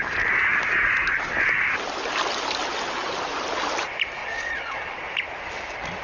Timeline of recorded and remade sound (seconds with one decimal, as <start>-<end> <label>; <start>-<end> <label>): 0.0-4.2 recorded; 4.2-5.0 remade; 5.0-6.0 recorded